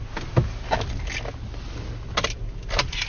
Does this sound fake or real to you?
real